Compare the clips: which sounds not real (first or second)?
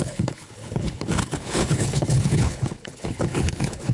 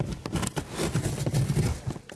first